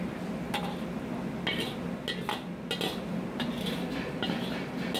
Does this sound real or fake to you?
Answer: real